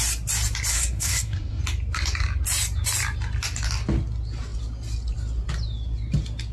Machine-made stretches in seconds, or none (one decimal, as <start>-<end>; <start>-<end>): 0.7-1.6